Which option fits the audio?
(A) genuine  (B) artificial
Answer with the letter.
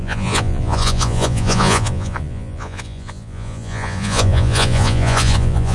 B